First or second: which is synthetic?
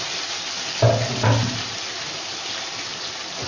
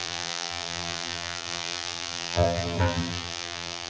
second